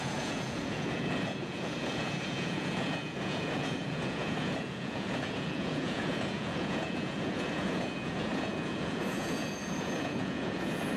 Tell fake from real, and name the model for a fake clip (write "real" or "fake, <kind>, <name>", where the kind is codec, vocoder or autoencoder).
fake, vocoder, Vocos